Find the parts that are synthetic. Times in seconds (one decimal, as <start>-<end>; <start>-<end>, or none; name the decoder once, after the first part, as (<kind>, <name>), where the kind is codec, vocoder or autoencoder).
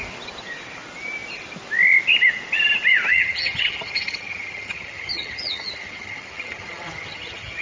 3.1-7.6 (vocoder, HiFi-GAN)